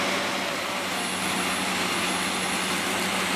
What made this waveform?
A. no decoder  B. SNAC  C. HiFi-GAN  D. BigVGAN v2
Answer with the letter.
A